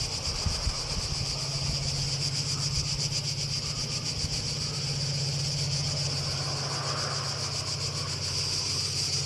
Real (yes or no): yes